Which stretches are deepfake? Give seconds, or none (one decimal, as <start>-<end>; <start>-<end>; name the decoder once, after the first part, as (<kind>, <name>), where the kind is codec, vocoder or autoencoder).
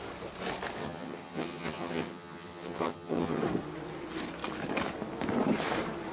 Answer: 0.8-3.4 (vocoder, HiFi-GAN)